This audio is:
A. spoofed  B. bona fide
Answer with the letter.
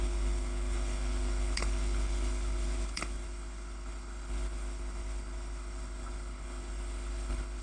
A